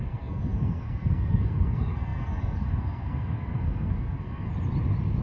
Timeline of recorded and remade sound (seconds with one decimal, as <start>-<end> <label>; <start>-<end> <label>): 0.0-4.5 remade; 4.5-5.2 recorded

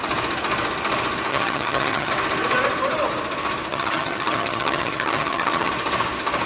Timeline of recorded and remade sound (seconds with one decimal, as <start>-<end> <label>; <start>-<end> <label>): 0.0-1.3 recorded; 1.3-2.1 remade; 2.1-3.7 recorded; 3.7-5.7 remade; 5.7-6.5 recorded

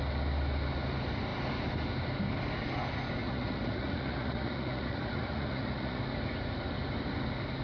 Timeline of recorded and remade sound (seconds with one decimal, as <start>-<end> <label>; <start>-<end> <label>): 0.0-3.2 recorded; 3.2-6.0 remade; 6.0-7.6 recorded